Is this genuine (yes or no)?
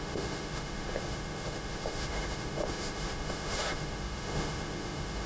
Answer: no